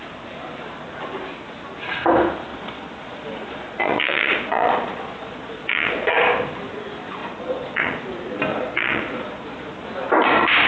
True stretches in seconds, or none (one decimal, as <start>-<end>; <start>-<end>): 0.0-2.5; 6.2-7.2; 8.0-8.5; 9.7-10.7